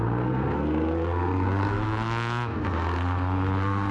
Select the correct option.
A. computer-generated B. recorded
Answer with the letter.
A